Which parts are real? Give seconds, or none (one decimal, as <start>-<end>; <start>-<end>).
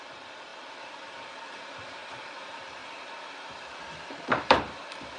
none